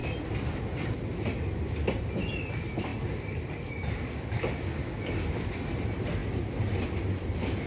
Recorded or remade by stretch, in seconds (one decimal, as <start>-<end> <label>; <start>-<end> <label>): 0.0-7.7 recorded